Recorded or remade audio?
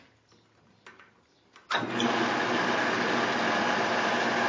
recorded